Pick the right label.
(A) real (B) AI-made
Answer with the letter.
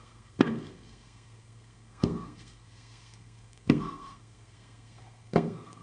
B